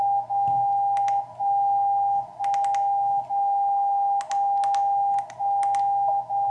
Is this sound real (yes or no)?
yes